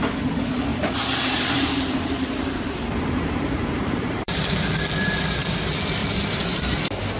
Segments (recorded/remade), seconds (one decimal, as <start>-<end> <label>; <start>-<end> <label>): 0.0-0.7 recorded; 0.7-4.8 remade; 4.8-6.0 recorded; 6.0-6.6 remade; 6.6-7.2 recorded